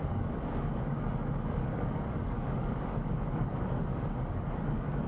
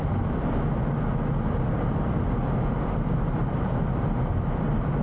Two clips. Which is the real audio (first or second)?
second